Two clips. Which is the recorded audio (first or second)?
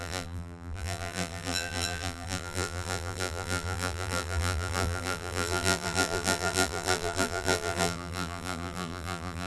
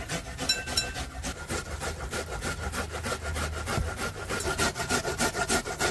second